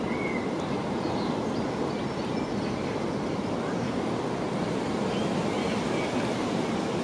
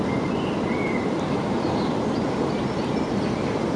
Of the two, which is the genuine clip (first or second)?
first